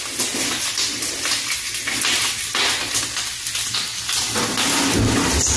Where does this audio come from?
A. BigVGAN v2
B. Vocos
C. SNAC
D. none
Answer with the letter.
D